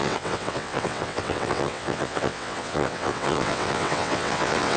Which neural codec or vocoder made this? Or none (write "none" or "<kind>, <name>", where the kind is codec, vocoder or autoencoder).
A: vocoder, WaveNeXt